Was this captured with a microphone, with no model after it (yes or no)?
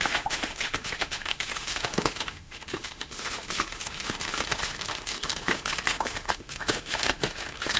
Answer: no